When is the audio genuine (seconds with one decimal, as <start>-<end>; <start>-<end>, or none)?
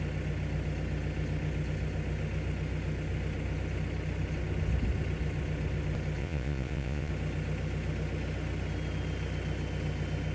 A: 0.0-6.2; 7.1-10.3